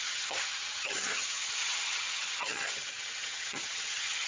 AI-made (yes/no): yes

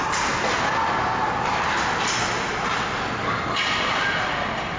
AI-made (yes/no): no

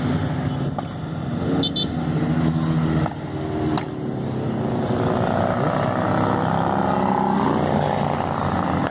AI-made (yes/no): no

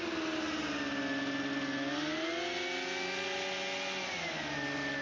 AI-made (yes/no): no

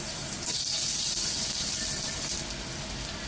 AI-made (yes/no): no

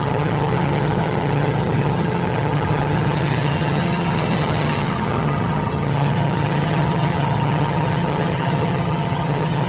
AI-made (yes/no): yes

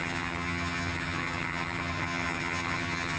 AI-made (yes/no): yes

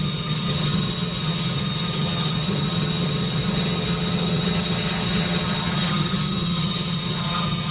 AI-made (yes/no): yes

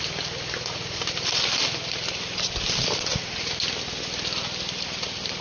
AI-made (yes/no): no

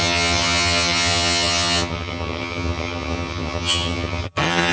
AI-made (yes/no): yes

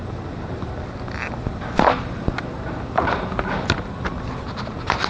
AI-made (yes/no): no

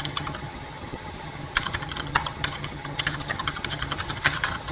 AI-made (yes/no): yes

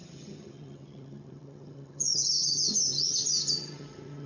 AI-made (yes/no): yes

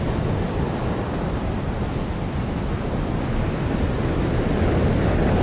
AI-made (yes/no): no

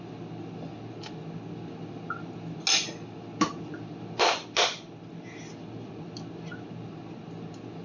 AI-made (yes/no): no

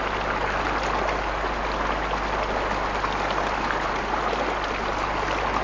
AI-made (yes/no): no